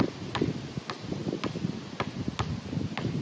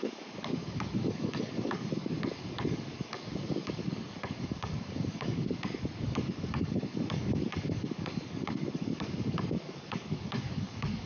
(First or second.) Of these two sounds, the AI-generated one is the second